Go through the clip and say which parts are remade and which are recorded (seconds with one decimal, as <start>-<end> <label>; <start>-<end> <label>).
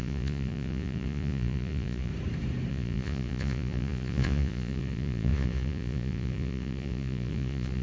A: 0.0-2.1 remade; 2.1-2.7 recorded; 2.7-7.8 remade